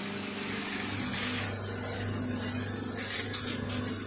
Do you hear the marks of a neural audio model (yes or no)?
no